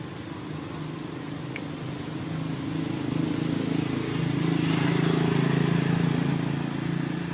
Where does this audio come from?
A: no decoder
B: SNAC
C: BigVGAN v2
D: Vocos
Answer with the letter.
A